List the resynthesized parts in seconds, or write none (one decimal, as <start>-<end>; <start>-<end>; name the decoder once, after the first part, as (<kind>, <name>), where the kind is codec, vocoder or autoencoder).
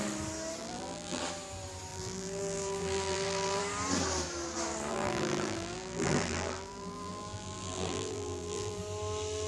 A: 0.6-1.2 (vocoder, BigVGAN v2); 1.9-3.6; 4.9-8.8